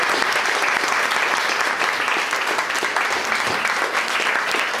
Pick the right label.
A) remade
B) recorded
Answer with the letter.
A